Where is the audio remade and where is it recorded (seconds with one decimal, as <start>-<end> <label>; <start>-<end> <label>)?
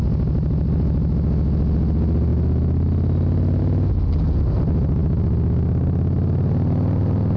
0.0-7.4 recorded